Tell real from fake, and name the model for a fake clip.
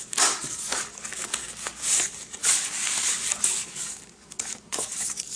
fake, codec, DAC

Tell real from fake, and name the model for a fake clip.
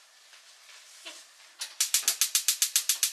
real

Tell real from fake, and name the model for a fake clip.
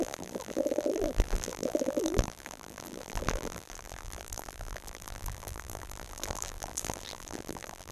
fake, vocoder, BigVGAN v2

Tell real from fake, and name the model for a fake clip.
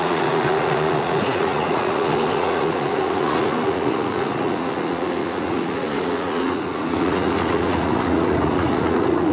fake, vocoder, Vocos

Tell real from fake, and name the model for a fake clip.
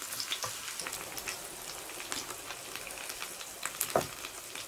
real